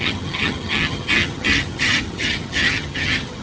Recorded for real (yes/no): no